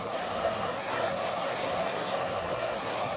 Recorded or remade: remade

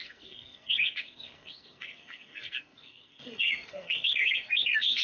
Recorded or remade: remade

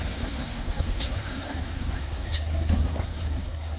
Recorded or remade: remade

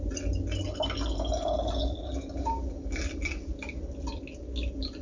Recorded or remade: recorded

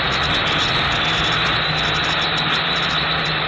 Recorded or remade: recorded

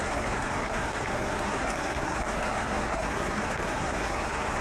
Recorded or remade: remade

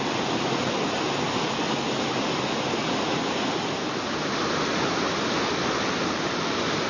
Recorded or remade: recorded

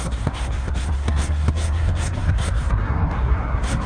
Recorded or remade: remade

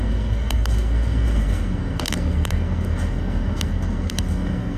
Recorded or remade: remade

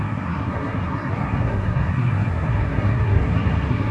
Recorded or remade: remade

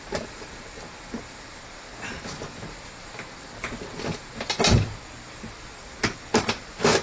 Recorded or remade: recorded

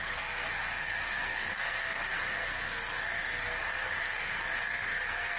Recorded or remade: remade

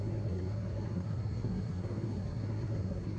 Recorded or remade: remade